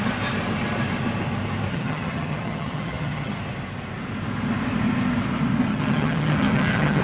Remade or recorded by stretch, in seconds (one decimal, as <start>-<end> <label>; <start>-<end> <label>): 0.0-1.7 recorded; 1.7-3.4 remade; 3.4-5.7 recorded; 5.7-7.0 remade